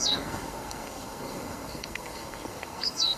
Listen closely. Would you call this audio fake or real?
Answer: fake